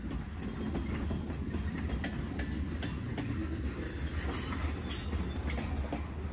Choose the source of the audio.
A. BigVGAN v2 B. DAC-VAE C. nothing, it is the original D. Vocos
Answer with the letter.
C